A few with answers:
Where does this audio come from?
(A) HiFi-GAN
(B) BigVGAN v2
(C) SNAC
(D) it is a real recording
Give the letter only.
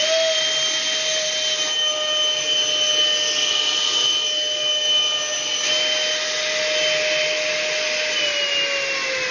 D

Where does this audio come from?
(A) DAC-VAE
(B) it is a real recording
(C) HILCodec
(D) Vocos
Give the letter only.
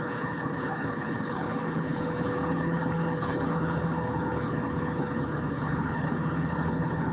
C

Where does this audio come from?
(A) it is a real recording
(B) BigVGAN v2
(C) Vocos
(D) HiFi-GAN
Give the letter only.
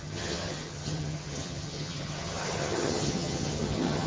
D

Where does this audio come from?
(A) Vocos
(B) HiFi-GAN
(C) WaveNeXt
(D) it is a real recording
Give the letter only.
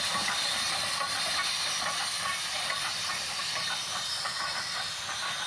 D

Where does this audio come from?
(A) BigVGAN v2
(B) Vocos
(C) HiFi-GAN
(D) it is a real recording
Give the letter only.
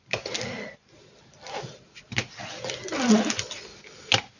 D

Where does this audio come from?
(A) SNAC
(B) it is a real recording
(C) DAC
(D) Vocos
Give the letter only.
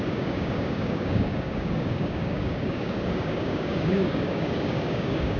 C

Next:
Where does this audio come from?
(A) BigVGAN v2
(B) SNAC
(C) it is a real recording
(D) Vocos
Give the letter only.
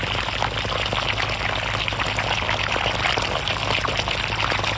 C